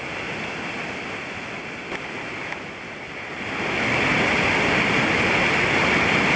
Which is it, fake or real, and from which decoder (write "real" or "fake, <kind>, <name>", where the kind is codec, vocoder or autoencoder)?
real